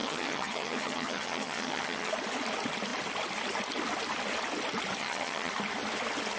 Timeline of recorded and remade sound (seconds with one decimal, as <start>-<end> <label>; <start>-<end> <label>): 0.0-2.1 remade; 2.1-5.0 recorded; 5.0-5.5 remade; 5.5-6.4 recorded

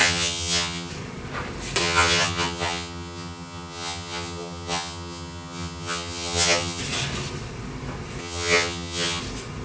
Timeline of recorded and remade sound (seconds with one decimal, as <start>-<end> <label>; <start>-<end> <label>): 0.0-0.9 remade; 0.9-1.8 recorded; 1.8-6.8 remade; 6.8-8.2 recorded; 8.2-9.2 remade; 9.2-9.6 recorded

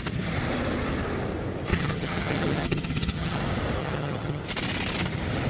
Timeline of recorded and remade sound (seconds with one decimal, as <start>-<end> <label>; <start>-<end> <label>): 0.0-1.7 recorded; 1.7-3.4 remade; 3.4-3.8 recorded; 3.8-4.4 remade; 4.4-5.5 recorded

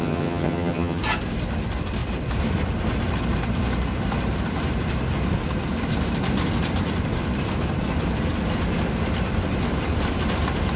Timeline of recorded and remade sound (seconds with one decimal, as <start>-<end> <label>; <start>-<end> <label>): 0.0-1.0 remade; 1.0-10.8 recorded

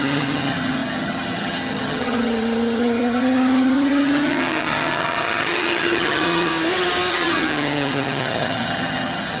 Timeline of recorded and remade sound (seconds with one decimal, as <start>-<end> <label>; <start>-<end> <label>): 0.0-6.5 remade; 6.5-7.1 recorded; 7.1-9.4 remade

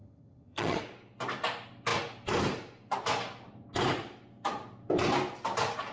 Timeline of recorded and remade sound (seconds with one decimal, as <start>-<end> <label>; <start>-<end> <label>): 0.0-0.8 remade; 0.8-5.9 recorded

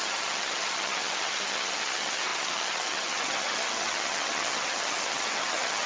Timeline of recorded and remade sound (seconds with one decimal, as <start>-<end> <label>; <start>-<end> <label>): 0.0-5.9 remade

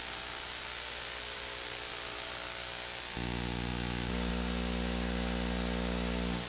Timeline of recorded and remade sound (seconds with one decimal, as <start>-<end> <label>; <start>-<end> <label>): 0.0-6.5 recorded